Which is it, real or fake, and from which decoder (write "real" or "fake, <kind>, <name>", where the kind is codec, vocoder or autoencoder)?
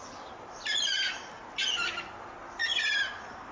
real